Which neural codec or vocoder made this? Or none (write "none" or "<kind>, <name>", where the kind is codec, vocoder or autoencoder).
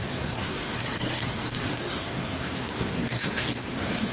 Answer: codec, SNAC